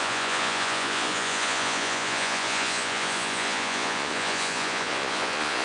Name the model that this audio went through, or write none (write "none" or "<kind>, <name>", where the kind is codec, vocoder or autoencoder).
vocoder, Vocos